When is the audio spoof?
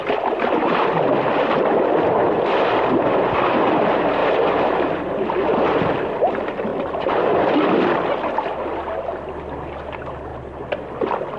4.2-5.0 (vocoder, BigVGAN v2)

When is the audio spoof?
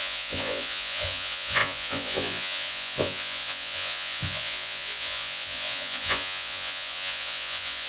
0.0-7.9 (vocoder, Vocos)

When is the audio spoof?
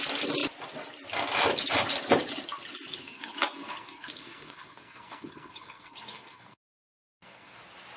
3.0-7.6 (codec, SNAC)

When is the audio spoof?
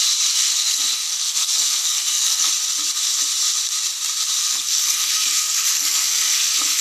0.4-2.5 (codec, SNAC); 4.4-6.8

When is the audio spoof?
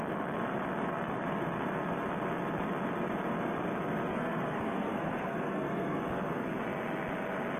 4.1-6.0 (codec, SNAC)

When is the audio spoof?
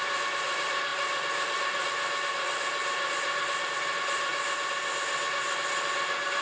none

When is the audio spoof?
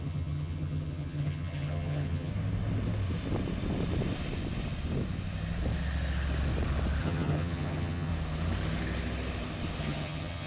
0.0-2.3 (vocoder, HiFi-GAN); 7.0-8.1; 9.8-10.5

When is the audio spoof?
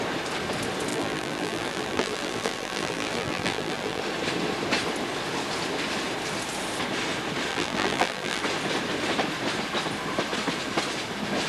0.9-4.0 (vocoder, BigVGAN v2); 7.5-8.4